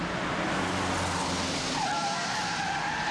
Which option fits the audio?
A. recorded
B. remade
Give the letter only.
A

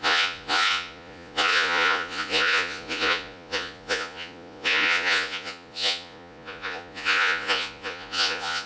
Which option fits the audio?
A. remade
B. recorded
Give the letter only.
A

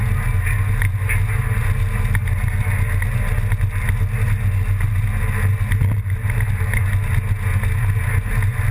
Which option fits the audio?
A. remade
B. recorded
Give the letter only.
B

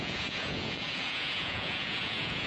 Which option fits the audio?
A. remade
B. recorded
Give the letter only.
A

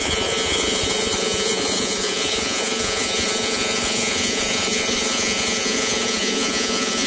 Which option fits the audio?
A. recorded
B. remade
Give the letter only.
B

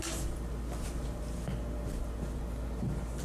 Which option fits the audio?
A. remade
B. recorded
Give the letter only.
B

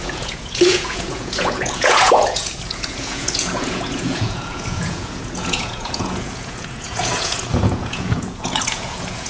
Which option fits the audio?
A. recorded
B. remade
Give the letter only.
B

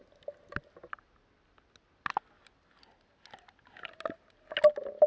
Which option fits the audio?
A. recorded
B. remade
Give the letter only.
A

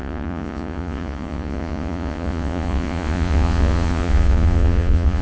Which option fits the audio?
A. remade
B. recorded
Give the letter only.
A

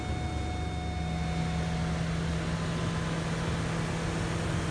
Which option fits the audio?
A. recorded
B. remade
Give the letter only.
A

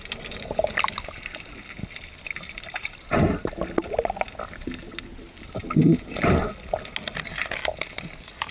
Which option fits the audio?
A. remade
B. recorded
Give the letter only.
B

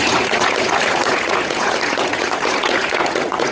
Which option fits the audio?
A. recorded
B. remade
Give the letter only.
B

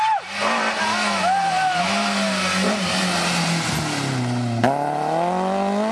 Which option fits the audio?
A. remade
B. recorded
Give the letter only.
B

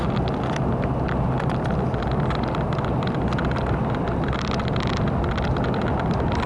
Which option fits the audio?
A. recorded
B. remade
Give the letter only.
A